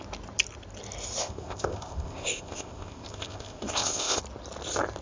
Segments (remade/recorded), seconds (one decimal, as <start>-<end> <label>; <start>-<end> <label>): 0.0-1.2 recorded; 1.2-4.2 remade; 4.2-5.0 recorded